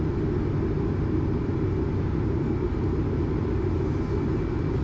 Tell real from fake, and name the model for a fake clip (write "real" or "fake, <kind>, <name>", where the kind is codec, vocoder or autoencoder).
real